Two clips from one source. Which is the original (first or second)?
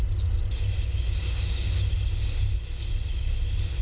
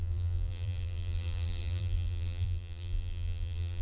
first